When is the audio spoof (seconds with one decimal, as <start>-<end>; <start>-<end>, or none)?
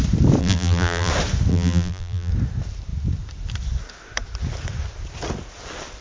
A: 0.4-1.1; 1.5-2.3